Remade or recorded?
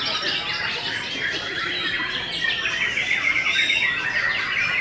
recorded